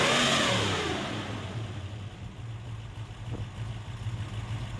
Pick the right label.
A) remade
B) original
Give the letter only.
B